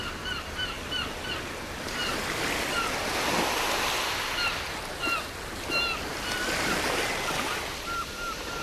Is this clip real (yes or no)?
yes